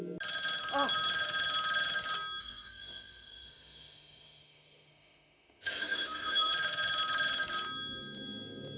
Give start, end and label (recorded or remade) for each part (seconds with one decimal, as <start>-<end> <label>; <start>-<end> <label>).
0.0-2.4 recorded; 2.4-6.5 remade; 6.5-8.8 recorded